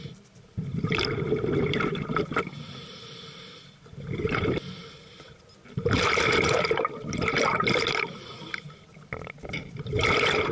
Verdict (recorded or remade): remade